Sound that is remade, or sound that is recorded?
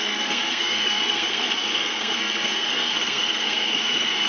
remade